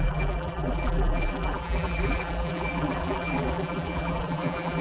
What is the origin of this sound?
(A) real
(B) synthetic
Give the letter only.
B